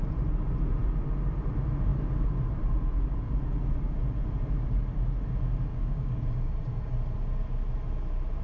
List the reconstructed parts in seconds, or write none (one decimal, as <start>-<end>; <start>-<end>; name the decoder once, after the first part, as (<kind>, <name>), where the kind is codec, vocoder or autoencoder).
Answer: 5.7-6.5 (codec, DAC)